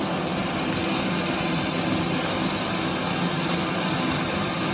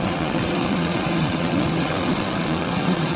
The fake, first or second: second